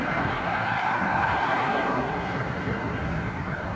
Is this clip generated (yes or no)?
yes